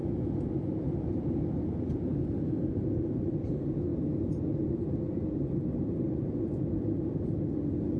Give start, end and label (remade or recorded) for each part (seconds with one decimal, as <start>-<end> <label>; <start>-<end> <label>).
0.0-1.0 recorded; 1.0-2.1 remade; 2.1-2.7 recorded; 2.7-3.9 remade; 3.9-4.9 recorded; 4.9-8.0 remade